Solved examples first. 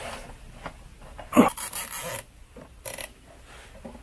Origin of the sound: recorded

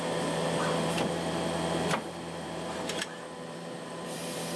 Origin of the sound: remade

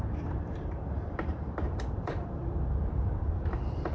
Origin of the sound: remade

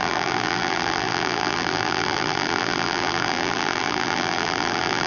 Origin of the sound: remade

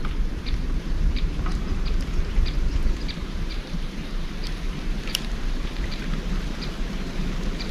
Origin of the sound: remade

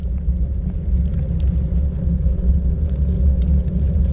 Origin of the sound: recorded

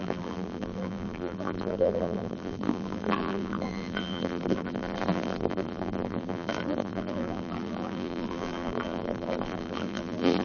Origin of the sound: remade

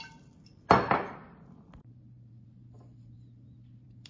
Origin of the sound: remade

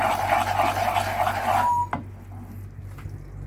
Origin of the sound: recorded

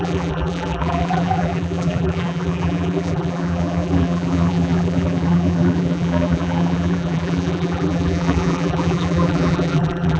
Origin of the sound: remade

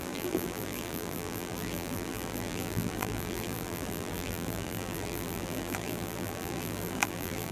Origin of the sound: remade